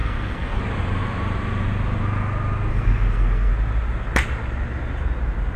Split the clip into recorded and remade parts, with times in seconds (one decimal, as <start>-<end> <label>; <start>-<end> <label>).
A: 0.0-0.6 remade; 0.6-2.7 recorded; 2.7-3.5 remade; 3.5-5.6 recorded